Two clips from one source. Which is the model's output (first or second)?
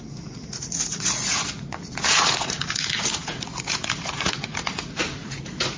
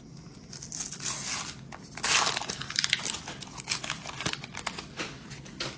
first